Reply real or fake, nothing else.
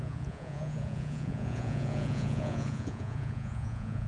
fake